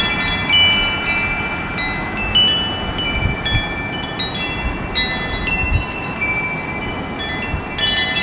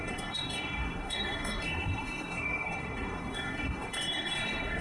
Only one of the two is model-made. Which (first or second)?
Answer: second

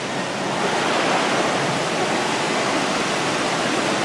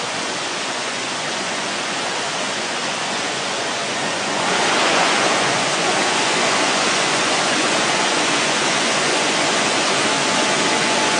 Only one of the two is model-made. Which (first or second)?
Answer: second